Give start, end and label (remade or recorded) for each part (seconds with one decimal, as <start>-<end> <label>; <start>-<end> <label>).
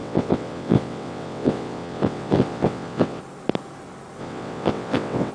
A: 0.0-3.2 remade; 3.2-4.2 recorded; 4.2-5.3 remade